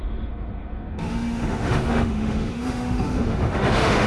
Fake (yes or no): yes